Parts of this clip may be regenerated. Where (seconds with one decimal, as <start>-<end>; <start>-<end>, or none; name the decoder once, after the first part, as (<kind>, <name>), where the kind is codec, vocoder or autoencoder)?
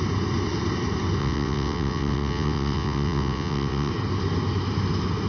1.2-3.9 (vocoder, WaveNeXt)